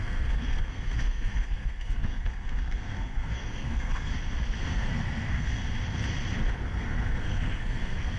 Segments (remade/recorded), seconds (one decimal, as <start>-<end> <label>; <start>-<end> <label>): 0.0-4.1 remade; 4.1-4.6 recorded; 4.6-5.6 remade; 5.6-6.7 recorded; 6.7-8.2 remade